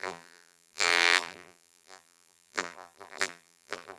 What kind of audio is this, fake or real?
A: fake